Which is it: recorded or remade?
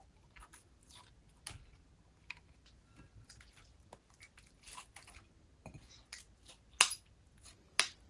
recorded